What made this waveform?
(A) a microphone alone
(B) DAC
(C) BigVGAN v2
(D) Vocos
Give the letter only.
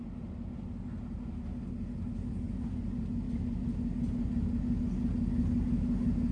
A